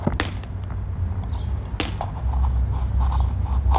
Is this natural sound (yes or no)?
yes